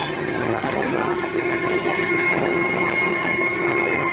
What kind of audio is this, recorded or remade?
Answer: remade